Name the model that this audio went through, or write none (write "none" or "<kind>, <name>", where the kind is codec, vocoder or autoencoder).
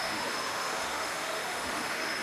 autoencoder, DAC-VAE